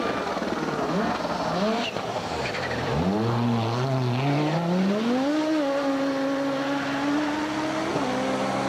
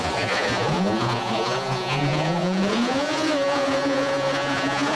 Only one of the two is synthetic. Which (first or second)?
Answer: second